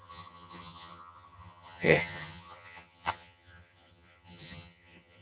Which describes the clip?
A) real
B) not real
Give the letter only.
B